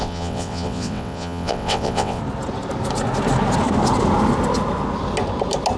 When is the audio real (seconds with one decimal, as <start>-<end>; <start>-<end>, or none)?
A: 2.2-5.8